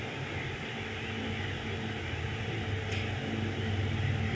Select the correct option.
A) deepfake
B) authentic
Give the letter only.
B